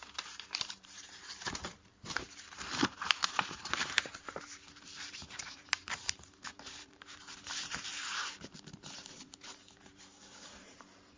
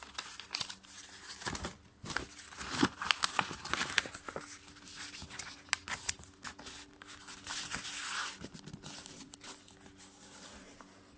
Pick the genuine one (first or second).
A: second